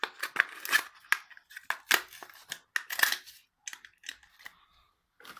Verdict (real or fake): real